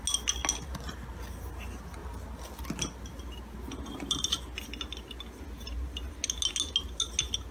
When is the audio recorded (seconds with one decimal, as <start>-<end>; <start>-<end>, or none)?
0.0-7.5